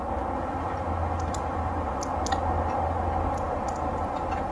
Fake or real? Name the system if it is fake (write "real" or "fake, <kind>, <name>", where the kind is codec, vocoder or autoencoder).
real